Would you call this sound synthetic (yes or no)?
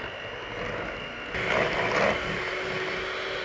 no